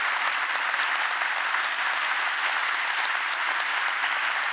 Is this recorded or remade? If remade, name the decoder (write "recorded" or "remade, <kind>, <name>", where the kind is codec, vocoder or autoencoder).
recorded